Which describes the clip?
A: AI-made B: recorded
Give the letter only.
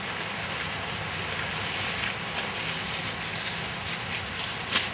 B